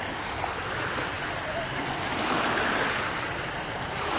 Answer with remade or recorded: remade